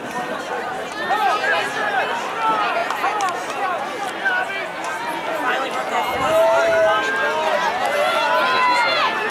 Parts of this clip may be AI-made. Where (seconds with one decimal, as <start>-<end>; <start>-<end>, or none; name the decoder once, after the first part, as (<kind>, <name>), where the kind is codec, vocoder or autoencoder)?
none